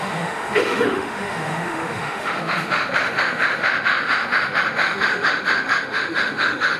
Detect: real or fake fake